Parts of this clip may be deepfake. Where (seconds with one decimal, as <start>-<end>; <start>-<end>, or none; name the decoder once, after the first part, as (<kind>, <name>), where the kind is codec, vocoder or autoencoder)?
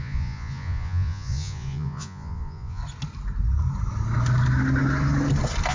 0.0-2.8 (vocoder, Vocos)